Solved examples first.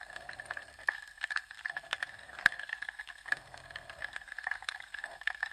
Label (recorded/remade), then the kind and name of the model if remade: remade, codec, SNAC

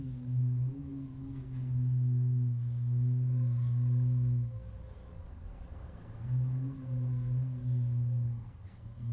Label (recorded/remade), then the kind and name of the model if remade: remade, codec, SNAC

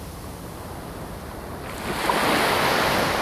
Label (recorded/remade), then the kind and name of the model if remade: recorded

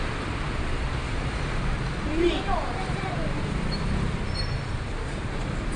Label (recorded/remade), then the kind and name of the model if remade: remade, vocoder, BigVGAN v2